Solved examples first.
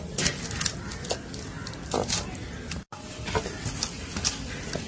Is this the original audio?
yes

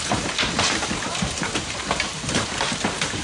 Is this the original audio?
no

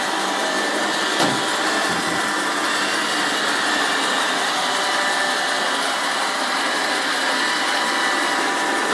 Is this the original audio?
yes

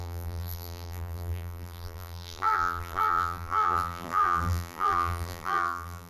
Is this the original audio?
no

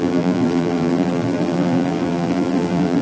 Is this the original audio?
no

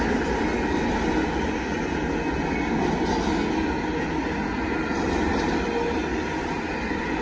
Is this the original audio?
yes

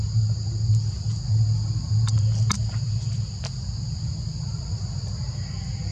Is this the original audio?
yes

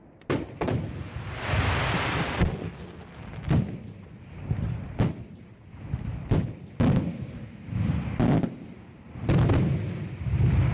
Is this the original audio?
yes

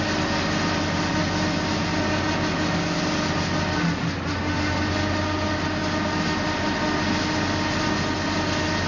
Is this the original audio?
yes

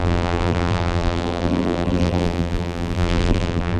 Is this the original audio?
no